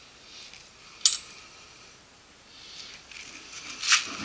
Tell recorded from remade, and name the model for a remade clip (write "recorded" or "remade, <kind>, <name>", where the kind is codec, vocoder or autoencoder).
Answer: recorded